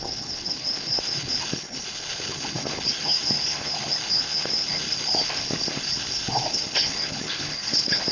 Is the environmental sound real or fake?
fake